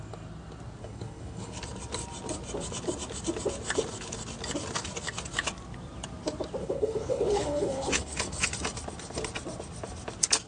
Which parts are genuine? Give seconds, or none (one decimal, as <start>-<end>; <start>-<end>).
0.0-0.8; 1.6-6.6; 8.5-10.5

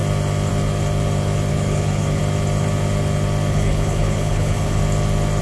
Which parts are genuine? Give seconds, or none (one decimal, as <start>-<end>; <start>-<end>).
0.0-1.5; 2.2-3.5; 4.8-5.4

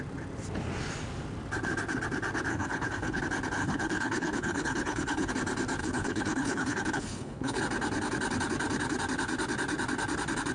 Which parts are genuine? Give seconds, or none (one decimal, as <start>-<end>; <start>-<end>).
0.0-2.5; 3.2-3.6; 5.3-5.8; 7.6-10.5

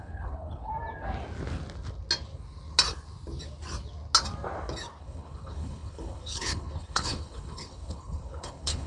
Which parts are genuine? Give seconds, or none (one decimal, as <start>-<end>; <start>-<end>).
0.7-5.0

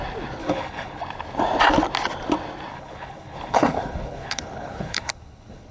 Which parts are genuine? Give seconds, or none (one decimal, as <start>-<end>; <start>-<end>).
0.0-0.4; 1.0-2.7